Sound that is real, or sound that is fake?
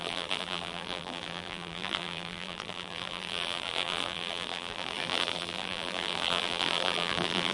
fake